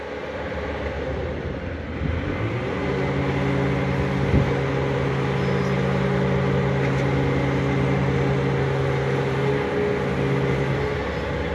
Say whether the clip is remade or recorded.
recorded